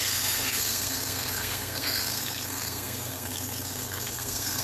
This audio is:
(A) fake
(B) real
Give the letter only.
A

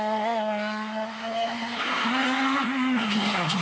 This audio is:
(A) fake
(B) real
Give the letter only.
A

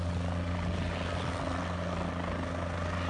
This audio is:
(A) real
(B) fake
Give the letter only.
A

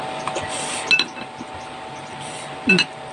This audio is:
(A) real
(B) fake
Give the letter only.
A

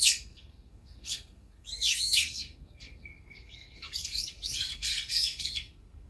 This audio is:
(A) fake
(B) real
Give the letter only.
A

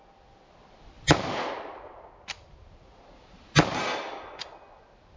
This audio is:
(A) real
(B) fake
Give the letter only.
A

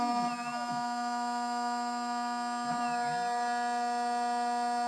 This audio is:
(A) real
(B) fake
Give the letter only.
A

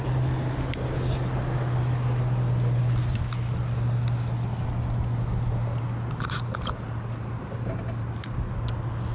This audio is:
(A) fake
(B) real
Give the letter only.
B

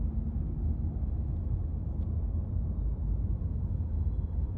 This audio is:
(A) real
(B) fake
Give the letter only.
A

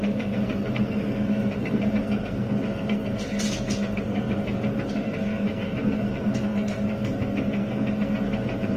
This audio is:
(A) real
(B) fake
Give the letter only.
B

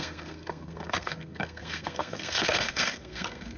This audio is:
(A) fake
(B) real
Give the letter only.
A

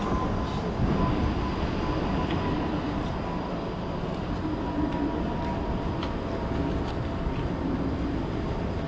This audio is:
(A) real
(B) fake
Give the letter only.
A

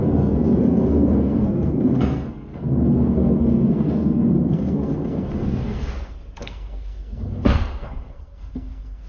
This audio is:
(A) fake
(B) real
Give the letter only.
A